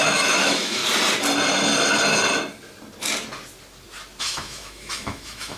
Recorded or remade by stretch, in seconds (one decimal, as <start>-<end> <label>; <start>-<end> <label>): 0.0-0.8 remade; 0.8-4.2 recorded; 4.2-5.6 remade